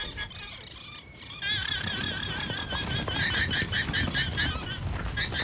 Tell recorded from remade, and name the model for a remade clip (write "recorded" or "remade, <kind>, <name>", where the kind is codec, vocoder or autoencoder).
recorded